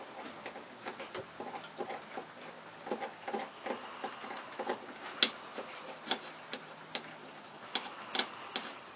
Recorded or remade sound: recorded